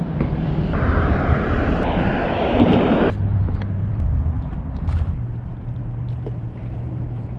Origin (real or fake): fake